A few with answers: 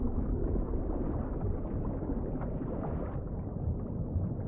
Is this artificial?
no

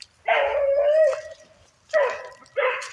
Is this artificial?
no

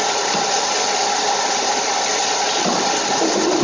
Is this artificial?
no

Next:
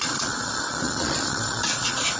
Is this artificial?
yes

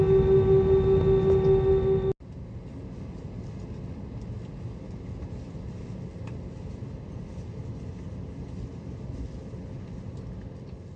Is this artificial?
no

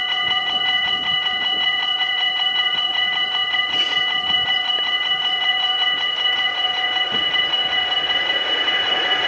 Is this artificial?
yes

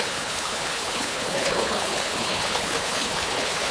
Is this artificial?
yes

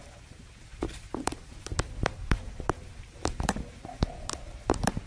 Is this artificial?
yes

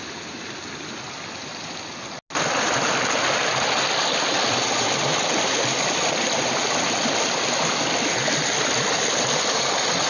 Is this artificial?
no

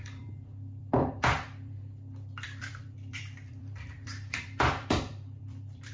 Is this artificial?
yes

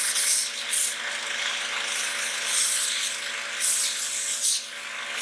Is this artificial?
no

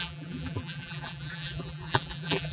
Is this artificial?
yes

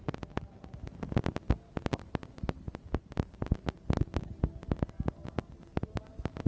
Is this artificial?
no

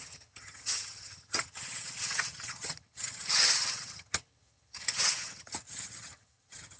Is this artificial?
yes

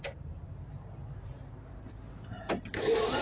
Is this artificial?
yes